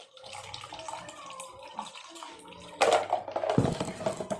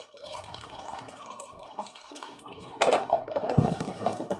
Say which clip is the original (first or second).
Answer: first